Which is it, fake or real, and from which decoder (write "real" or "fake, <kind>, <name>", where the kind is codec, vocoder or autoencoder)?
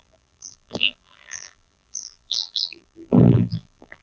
fake, vocoder, BigVGAN v2